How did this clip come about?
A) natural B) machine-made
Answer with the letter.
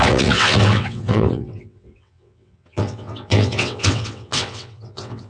B